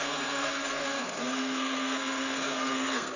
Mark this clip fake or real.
fake